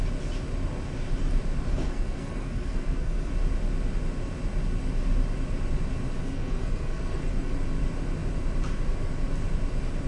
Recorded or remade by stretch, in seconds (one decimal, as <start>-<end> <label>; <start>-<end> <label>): 0.0-1.7 recorded; 1.7-3.3 remade; 3.3-6.2 recorded; 6.2-7.5 remade; 7.5-10.1 recorded